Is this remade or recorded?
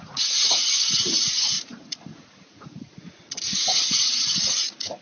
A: remade